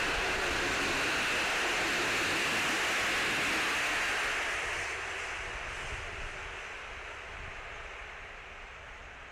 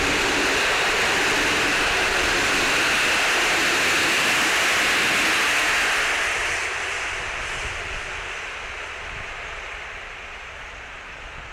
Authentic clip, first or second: first